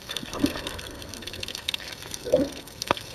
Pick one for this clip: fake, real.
fake